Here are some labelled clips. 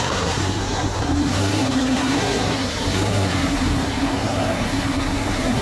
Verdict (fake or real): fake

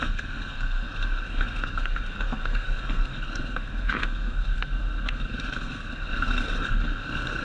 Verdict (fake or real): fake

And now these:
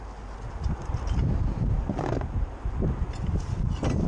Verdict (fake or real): real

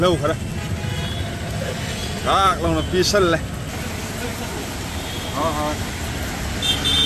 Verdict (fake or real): real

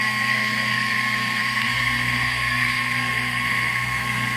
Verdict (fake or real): fake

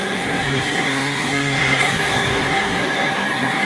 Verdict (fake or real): fake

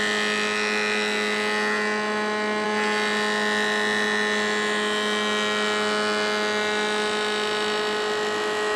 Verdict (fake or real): real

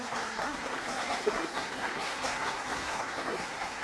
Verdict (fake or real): fake